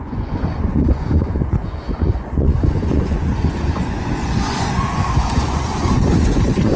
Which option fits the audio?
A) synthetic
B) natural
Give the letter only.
A